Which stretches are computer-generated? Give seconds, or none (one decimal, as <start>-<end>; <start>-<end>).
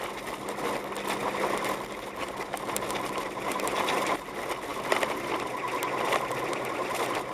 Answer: none